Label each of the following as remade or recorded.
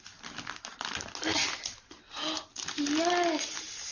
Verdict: recorded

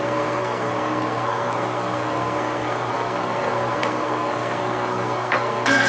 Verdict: remade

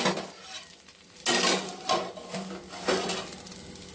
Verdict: recorded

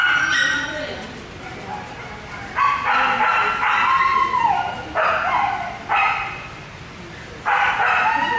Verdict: recorded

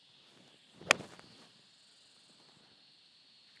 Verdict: recorded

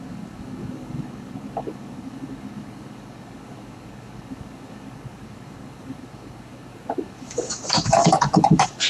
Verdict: remade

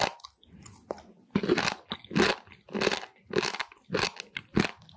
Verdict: recorded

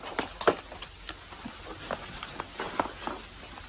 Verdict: recorded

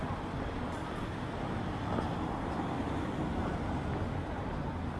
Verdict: recorded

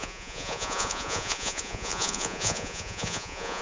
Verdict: remade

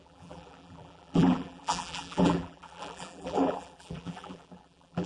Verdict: remade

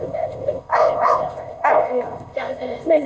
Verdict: remade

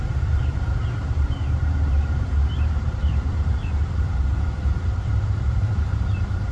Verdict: remade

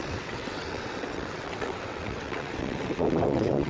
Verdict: remade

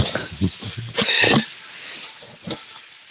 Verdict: recorded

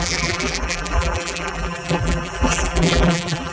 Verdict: remade